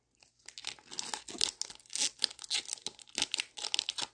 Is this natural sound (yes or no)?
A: yes